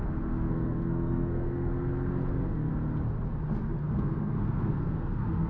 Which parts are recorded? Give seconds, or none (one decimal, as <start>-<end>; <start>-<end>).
1.7-2.3; 2.7-3.8